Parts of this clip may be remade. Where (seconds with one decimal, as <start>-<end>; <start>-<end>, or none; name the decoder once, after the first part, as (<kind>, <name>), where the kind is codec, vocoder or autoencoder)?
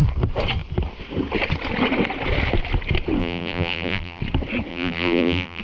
3.2-4.2 (vocoder, BigVGAN v2); 4.7-5.6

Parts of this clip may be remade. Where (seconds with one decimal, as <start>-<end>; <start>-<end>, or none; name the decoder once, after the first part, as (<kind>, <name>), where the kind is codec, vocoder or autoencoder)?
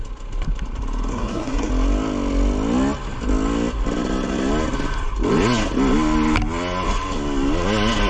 1.1-1.7 (codec, SNAC)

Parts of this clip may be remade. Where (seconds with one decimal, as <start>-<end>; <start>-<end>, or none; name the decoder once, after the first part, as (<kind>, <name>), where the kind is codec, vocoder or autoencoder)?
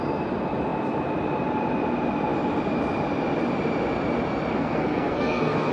4.5-5.7 (codec, SNAC)